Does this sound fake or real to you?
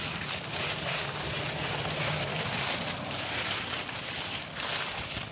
real